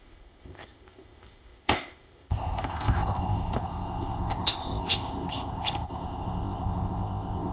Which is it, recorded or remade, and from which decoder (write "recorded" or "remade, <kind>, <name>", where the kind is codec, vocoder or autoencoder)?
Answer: remade, codec, ZipCodec